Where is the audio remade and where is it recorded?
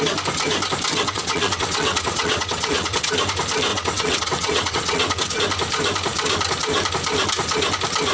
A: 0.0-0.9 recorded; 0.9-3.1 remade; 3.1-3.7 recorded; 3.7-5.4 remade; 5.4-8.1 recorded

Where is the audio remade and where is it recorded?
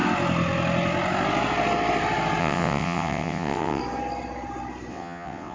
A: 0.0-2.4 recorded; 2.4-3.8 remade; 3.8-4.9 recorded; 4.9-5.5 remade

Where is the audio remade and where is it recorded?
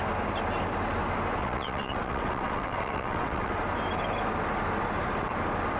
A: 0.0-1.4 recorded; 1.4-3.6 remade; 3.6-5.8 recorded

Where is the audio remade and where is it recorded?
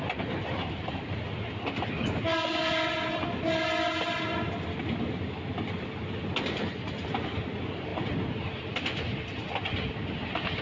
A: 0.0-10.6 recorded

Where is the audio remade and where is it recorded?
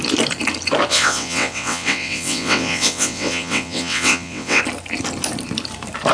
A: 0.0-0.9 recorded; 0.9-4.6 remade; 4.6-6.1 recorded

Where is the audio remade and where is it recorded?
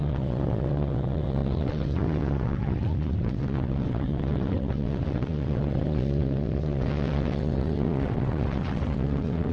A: 0.0-9.5 remade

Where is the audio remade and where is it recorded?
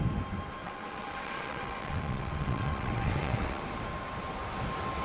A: 0.0-0.6 recorded; 0.6-3.6 remade; 3.6-5.0 recorded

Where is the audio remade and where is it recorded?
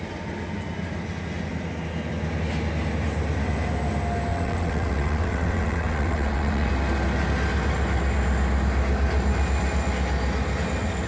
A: 0.0-4.3 recorded; 4.3-6.7 remade; 6.7-11.1 recorded